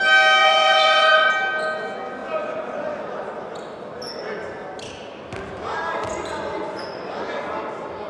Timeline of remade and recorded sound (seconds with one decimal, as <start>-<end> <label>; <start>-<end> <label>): 0.0-0.4 recorded; 0.4-1.3 remade; 1.3-6.0 recorded; 6.0-7.0 remade; 7.0-8.1 recorded

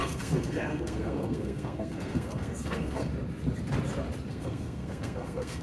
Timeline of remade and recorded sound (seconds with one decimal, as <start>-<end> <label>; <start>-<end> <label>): 0.0-3.1 remade; 3.1-4.3 recorded; 4.3-5.6 remade

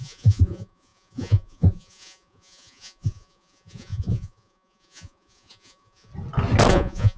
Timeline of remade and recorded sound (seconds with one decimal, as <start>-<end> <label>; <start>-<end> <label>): 0.0-6.1 remade; 6.1-6.7 recorded; 6.7-7.2 remade

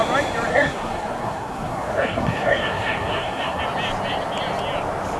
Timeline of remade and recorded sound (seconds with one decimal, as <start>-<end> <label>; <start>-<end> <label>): 0.0-0.5 recorded; 0.5-3.6 remade; 3.6-5.2 recorded

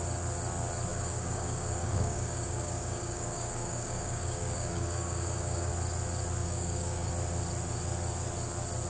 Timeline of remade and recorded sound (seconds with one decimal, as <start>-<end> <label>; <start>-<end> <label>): 0.0-0.9 recorded; 0.9-5.7 remade; 5.7-6.4 recorded; 6.4-7.1 remade; 7.1-8.9 recorded

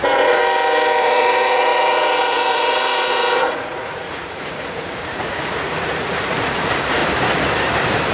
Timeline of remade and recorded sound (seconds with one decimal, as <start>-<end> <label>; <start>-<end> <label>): 0.0-0.4 remade; 0.4-1.0 recorded; 1.0-7.0 remade; 7.0-8.1 recorded

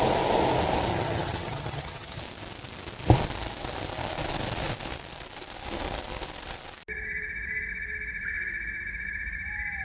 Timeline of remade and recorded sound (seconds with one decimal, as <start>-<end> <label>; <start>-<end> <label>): 0.0-0.9 recorded; 0.9-2.2 remade; 2.2-9.8 recorded